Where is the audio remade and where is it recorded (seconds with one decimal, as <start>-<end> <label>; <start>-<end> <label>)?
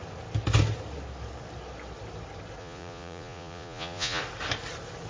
0.0-2.6 recorded; 2.6-4.2 remade; 4.2-5.1 recorded